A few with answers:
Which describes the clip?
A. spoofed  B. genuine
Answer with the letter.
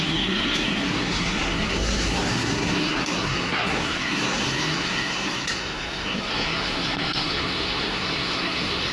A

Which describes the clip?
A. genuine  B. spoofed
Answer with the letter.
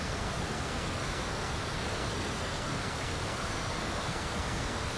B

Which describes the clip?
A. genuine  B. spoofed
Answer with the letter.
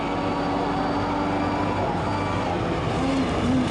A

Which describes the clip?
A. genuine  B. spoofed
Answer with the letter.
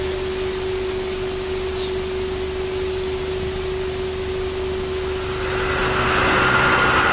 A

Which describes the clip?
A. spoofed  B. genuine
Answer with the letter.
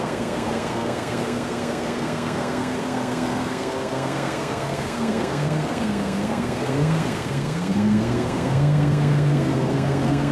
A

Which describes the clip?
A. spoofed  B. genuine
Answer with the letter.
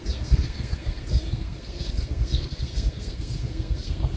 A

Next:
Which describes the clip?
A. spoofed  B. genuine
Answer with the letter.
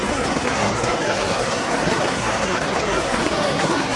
A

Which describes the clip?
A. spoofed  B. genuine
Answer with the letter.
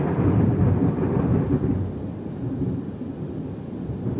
B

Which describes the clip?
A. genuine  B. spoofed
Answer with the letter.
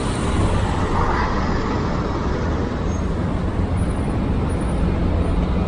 A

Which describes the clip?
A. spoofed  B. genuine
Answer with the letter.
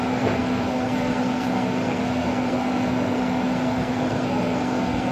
A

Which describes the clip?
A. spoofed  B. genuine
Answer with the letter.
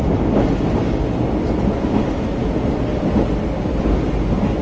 B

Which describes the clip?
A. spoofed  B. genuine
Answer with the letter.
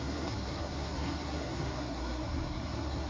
A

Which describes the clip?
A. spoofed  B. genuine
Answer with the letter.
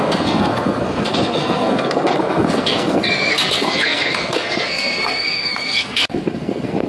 A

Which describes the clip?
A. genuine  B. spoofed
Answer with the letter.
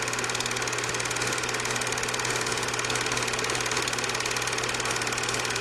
A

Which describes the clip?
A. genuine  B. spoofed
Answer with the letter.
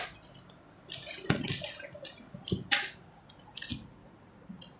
A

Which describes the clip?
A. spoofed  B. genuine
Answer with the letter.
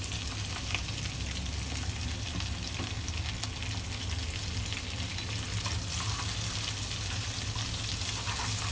B